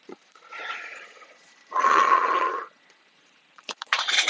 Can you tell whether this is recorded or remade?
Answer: remade